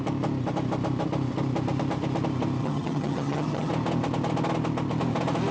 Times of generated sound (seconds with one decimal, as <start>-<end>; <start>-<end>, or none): 2.6-3.7